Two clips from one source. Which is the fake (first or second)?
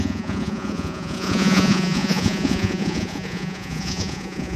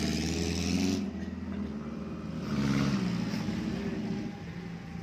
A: first